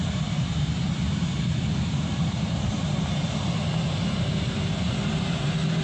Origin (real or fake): fake